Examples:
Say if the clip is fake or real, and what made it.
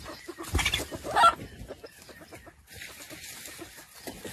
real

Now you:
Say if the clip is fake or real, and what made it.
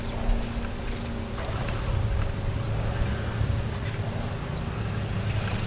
real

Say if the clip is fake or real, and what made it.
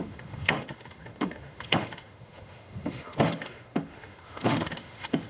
fake, autoencoder, DAC-VAE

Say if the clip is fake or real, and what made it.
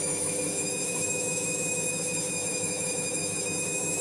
fake, autoencoder, DAC-VAE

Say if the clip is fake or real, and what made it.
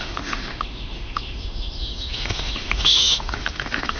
fake, autoencoder, DAC-VAE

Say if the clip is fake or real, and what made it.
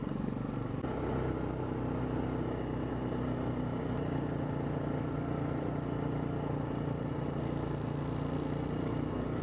real